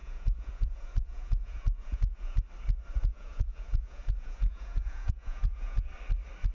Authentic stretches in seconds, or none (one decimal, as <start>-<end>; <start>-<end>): 2.4-3.1; 5.9-6.5